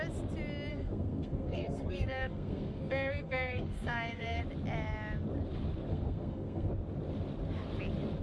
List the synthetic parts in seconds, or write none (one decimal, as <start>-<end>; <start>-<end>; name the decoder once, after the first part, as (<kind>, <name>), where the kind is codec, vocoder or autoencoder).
0.7-4.4 (codec, SNAC); 5.9-6.7